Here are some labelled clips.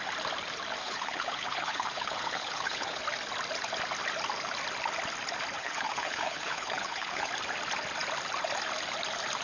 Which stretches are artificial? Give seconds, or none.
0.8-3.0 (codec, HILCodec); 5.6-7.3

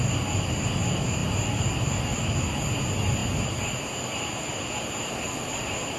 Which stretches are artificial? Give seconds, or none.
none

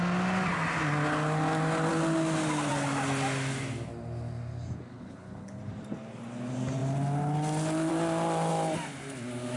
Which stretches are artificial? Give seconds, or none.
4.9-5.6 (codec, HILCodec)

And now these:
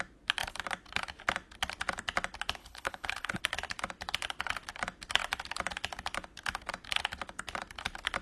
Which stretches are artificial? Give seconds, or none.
2.6-3.4 (codec, HILCodec)

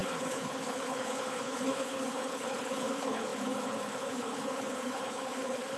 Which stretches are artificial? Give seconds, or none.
0.0-5.8 (codec, HILCodec)

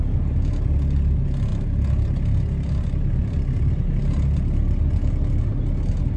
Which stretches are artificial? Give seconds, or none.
none

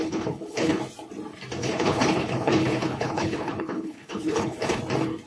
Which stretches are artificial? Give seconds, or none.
0.0-0.8 (codec, HILCodec); 1.6-4.8

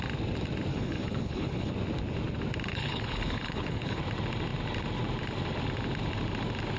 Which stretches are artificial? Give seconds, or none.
0.7-1.7 (codec, HILCodec); 2.7-4.0